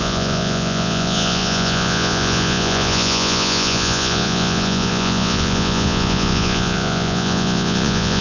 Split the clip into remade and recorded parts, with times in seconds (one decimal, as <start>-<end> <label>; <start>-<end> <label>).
0.0-8.2 remade